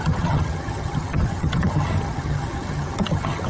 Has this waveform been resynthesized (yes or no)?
yes